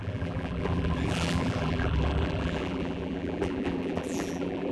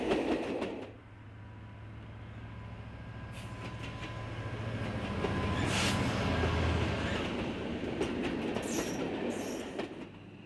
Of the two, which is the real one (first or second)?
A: second